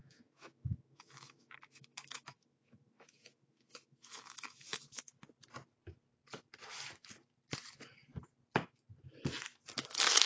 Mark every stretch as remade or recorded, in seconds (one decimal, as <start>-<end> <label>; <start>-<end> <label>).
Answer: 0.0-5.2 remade; 5.2-10.3 recorded